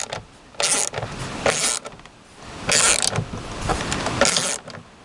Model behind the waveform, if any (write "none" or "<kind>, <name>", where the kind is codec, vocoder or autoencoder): none